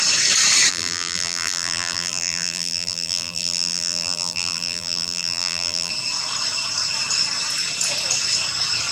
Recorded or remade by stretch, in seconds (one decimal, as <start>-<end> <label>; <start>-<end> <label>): 0.0-0.7 recorded; 0.7-5.9 remade; 5.9-8.9 recorded